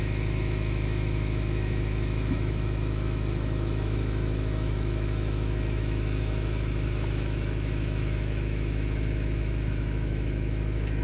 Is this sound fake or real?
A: fake